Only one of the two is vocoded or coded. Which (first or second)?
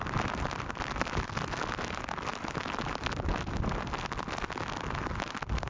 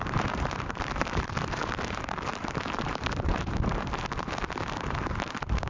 second